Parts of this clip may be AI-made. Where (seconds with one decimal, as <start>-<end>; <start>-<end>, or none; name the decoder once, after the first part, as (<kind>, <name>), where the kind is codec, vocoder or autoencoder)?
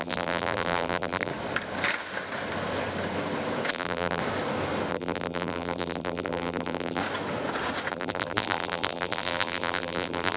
0.0-1.3 (vocoder, BigVGAN v2); 3.7-4.2; 4.9-7.0; 7.9-10.4